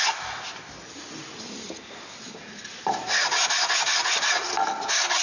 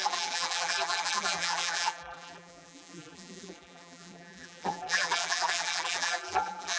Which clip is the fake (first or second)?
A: second